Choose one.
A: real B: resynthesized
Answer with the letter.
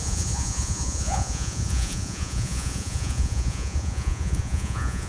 B